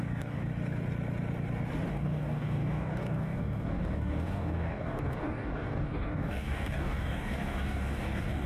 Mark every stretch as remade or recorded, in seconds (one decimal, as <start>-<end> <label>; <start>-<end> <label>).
0.0-0.5 remade; 0.5-1.9 recorded; 1.9-8.5 remade